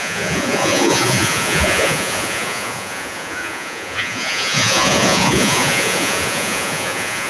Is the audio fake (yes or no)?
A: yes